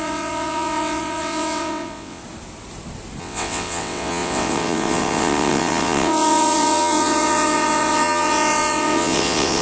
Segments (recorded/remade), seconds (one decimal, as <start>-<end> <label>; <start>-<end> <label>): 0.0-2.2 remade; 2.2-3.2 recorded; 3.2-9.6 remade